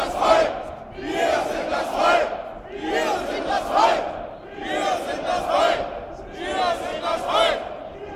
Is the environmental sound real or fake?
real